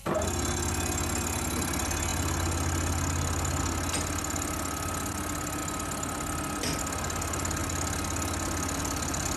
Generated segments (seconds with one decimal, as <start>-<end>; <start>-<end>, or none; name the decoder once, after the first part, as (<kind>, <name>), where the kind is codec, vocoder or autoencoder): none